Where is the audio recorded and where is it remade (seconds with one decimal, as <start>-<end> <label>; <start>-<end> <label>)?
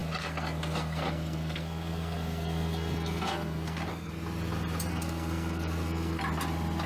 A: 0.0-4.1 remade; 4.1-4.9 recorded; 4.9-6.2 remade; 6.2-6.9 recorded